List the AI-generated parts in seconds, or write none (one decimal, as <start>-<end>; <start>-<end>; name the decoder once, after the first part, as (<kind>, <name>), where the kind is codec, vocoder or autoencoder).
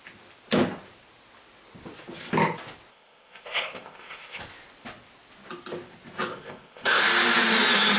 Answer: 2.9-4.4 (codec, ZipCodec); 6.3-7.0